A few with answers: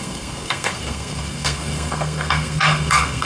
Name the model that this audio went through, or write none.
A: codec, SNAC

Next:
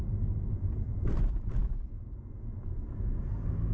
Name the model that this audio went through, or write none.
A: none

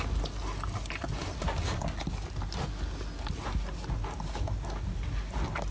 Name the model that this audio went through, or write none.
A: none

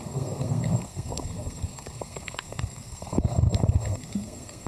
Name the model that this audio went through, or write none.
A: codec, SNAC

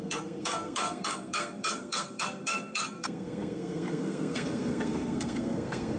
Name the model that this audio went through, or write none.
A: codec, SNAC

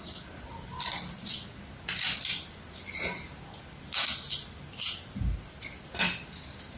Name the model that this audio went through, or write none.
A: none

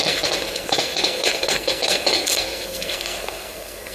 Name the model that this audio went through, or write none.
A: codec, SNAC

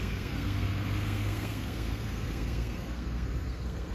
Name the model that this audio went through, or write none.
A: codec, SNAC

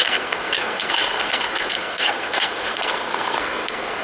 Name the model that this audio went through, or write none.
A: codec, SNAC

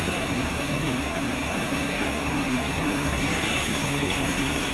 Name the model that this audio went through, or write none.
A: codec, SNAC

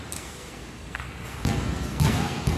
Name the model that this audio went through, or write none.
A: codec, SNAC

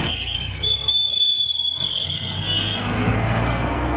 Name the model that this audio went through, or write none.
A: codec, SNAC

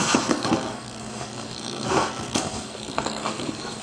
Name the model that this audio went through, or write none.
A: codec, SNAC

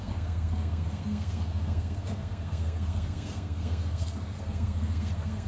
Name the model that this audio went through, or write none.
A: codec, SNAC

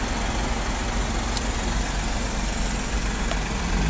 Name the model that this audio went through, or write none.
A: none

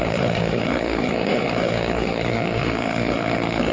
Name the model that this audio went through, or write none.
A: codec, SNAC